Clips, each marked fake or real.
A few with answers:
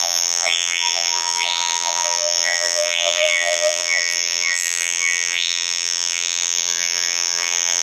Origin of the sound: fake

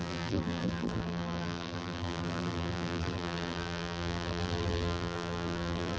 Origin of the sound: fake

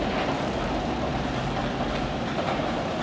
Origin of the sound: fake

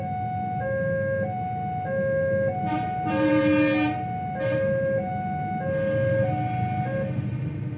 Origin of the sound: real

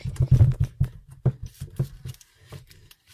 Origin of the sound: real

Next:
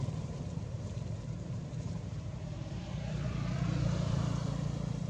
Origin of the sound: fake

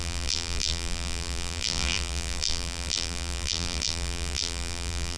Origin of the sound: fake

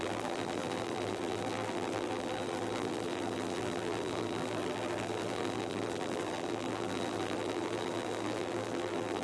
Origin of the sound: fake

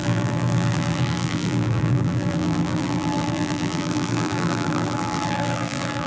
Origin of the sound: fake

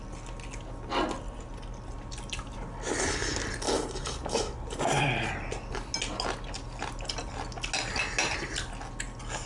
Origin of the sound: real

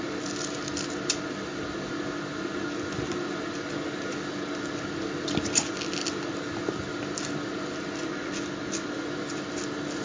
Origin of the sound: real